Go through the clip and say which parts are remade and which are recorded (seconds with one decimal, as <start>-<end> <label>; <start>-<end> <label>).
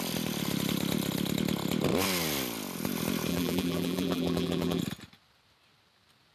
0.0-3.3 recorded; 3.3-4.8 remade; 4.8-6.3 recorded